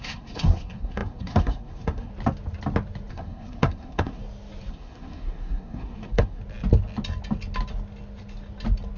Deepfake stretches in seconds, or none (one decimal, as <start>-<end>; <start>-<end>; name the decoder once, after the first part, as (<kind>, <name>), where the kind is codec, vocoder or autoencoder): 0.0-2.1 (codec, SNAC); 3.1-4.2; 4.7-6.4

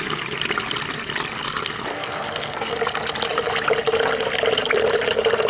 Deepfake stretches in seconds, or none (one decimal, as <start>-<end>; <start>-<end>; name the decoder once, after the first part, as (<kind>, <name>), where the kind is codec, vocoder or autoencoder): 1.9-2.7 (codec, SNAC)